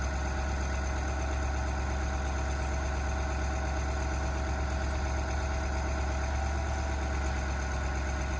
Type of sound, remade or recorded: recorded